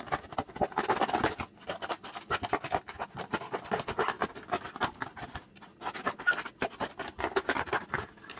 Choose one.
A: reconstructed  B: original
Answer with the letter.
B